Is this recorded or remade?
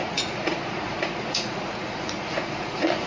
remade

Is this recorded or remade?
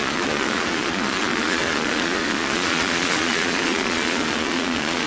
remade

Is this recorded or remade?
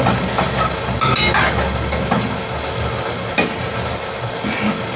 recorded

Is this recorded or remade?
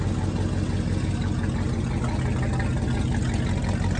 recorded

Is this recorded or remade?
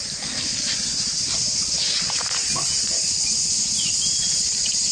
recorded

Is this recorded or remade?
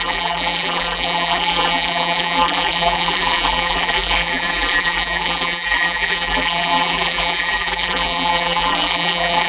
remade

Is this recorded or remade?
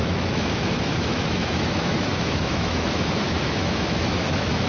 remade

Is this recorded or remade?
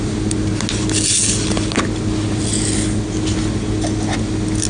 recorded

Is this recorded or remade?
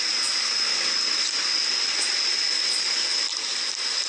recorded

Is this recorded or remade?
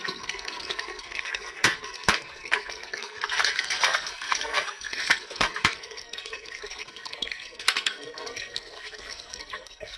remade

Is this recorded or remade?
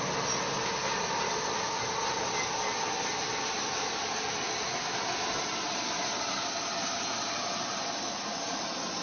recorded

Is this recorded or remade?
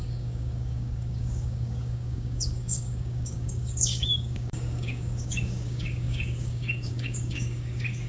remade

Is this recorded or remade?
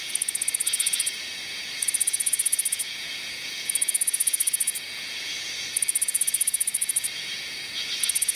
remade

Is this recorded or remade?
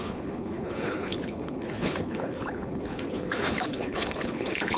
remade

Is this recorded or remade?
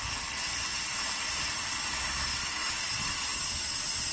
recorded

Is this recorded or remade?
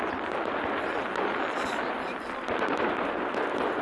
recorded